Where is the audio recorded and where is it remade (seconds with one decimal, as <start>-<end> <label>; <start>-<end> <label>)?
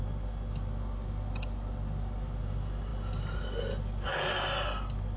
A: 0.0-5.2 recorded